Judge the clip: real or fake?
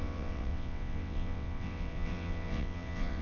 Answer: fake